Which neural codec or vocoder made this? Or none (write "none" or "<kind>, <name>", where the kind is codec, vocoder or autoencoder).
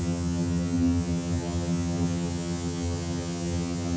vocoder, HiFi-GAN